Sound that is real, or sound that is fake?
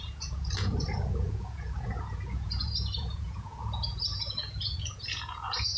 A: fake